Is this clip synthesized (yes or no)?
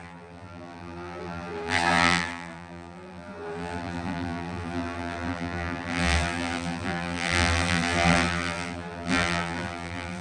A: yes